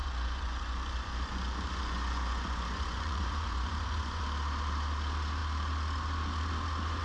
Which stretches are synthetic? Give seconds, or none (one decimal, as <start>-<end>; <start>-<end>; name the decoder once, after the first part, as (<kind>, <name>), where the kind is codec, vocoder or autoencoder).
0.0-4.2 (vocoder, Vocos)